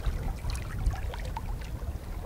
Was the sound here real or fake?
real